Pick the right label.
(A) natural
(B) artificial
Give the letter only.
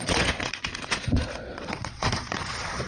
B